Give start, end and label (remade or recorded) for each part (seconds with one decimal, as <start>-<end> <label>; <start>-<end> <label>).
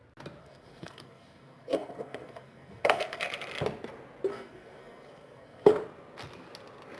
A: 0.0-0.4 recorded; 0.4-3.2 remade; 3.2-4.3 recorded; 4.3-5.7 remade; 5.7-7.0 recorded